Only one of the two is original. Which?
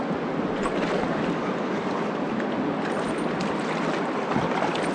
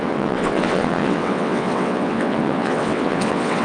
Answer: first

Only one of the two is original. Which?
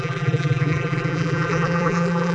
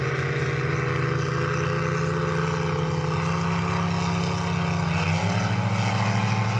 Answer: second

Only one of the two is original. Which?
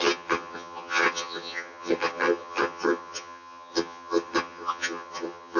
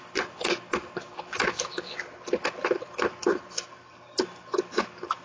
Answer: second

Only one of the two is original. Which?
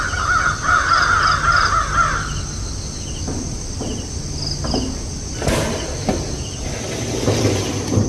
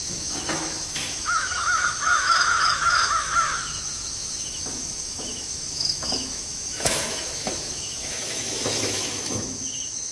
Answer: first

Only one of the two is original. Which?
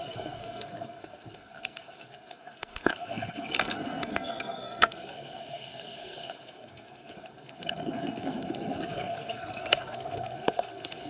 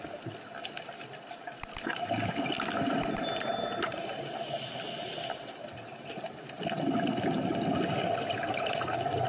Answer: second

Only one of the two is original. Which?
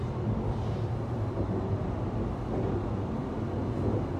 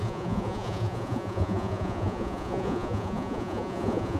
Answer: first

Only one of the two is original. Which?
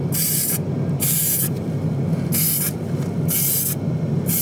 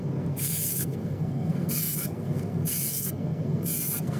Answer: first